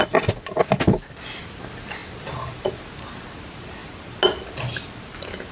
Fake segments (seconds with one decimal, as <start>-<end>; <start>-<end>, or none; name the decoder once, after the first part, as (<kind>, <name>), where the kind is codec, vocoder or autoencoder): none